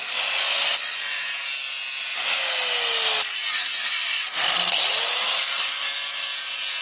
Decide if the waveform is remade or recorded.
recorded